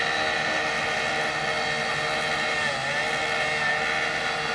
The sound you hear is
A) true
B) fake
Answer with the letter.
A